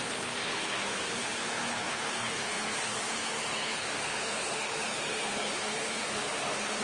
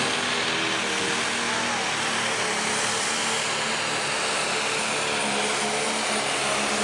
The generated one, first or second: first